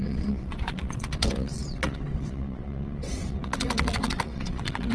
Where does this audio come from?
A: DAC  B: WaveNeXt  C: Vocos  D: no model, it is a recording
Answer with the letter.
B